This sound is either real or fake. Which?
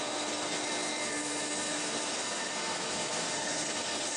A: fake